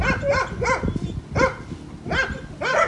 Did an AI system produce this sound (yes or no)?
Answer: no